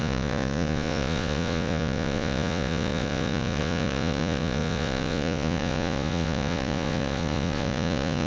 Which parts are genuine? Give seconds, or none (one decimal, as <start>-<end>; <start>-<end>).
none